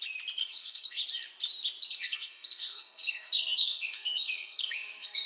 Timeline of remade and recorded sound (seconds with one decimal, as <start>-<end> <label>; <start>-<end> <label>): 0.0-0.4 recorded; 0.4-1.0 remade; 1.0-2.0 recorded; 2.0-5.3 remade